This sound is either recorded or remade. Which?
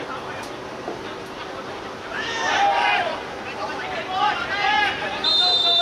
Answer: recorded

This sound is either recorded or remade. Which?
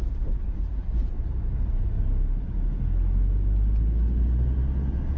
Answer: recorded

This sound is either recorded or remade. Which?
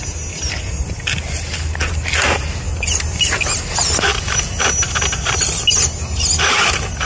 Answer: recorded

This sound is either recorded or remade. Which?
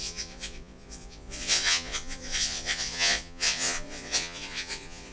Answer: remade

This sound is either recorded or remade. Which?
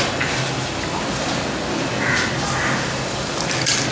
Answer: recorded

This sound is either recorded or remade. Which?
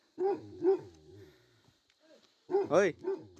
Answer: recorded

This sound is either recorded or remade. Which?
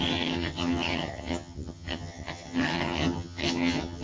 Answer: remade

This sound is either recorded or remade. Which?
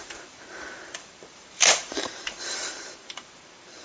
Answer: remade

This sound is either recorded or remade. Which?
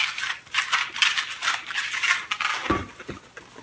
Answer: recorded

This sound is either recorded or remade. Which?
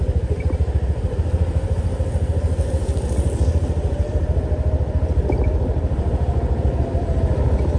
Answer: recorded